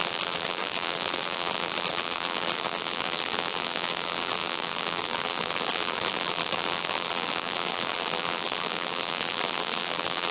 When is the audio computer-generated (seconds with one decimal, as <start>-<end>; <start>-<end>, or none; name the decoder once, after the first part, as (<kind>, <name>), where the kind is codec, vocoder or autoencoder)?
0.0-10.3 (vocoder, BigVGAN v2)